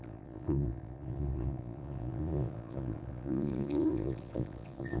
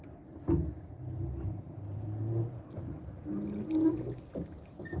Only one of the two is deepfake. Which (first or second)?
first